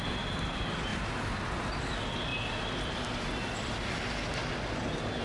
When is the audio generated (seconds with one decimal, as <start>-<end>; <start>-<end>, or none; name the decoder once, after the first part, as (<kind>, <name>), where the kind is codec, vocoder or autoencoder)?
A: none